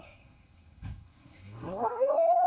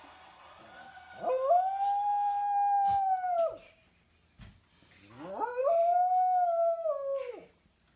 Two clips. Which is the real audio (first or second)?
second